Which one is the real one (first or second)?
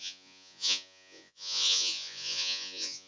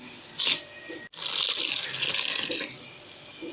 second